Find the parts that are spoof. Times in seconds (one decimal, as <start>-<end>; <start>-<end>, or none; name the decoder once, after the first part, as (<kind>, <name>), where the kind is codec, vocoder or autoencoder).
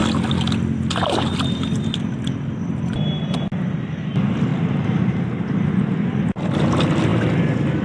none